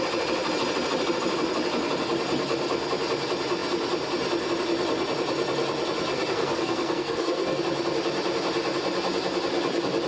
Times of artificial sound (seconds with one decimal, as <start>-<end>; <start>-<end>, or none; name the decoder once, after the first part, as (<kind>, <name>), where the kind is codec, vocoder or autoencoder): 6.1-7.6 (codec, SNAC)